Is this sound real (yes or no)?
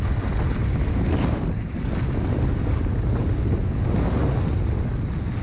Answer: yes